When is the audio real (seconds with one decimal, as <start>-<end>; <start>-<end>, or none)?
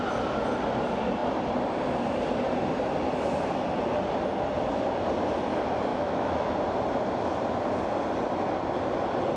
0.0-5.9; 6.5-9.4